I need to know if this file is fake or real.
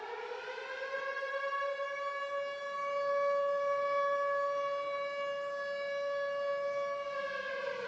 real